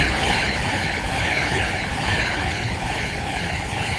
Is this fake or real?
fake